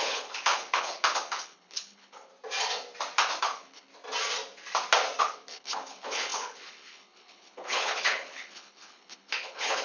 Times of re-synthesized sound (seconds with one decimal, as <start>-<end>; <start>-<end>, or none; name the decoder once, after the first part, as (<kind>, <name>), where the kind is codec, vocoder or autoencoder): 0.0-2.3 (codec, HILCodec); 3.4-3.9; 5.2-9.8